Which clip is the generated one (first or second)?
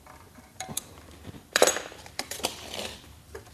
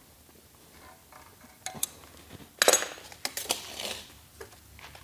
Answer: first